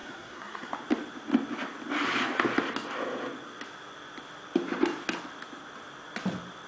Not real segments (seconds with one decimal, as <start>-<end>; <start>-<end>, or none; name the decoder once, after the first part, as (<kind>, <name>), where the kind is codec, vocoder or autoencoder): 0.0-0.7 (codec, SNAC)